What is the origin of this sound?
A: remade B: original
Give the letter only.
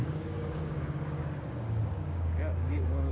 A